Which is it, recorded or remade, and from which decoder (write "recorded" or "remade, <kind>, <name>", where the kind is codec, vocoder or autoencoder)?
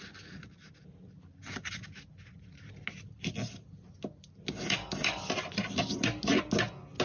recorded